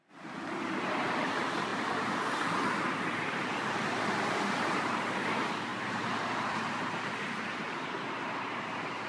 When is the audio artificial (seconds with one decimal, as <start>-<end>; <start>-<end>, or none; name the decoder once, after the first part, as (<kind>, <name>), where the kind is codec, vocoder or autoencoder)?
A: none